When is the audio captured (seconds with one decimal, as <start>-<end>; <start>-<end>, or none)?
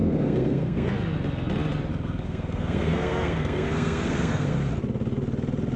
0.9-1.9; 4.7-5.8